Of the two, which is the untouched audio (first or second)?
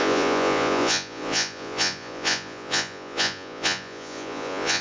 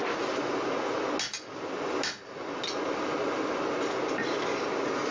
second